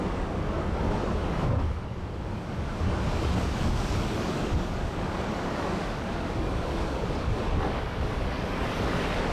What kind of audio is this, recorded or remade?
remade